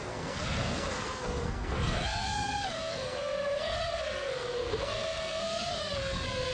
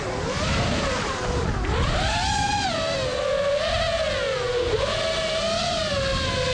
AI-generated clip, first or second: first